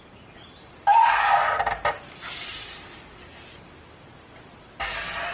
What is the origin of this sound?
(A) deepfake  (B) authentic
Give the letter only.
B